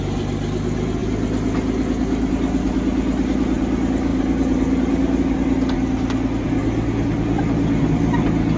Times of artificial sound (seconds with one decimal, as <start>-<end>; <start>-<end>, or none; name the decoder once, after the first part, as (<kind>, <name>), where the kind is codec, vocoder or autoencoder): 4.1-5.2 (vocoder, BigVGAN v2)